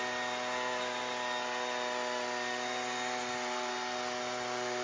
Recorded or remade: recorded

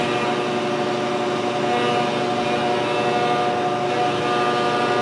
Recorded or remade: recorded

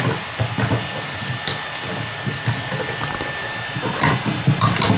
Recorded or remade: recorded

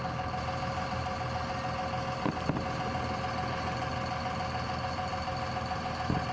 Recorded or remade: recorded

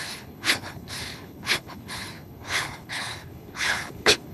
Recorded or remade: remade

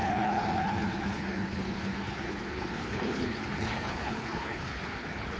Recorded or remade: remade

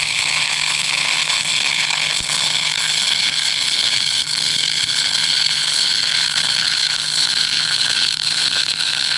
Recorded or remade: remade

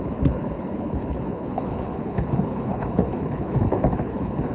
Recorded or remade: remade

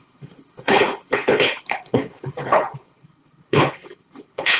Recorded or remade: remade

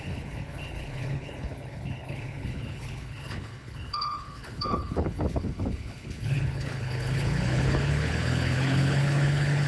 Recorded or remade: remade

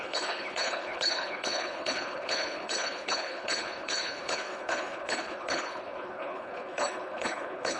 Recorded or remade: remade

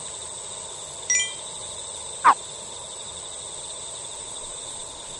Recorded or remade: recorded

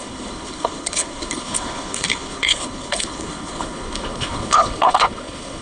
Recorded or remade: remade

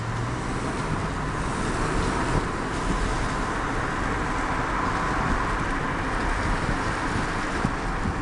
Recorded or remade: recorded